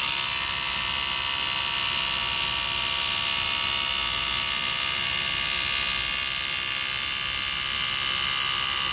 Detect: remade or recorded recorded